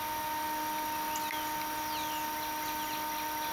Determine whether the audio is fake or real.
real